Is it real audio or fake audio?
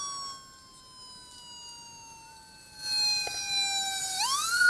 real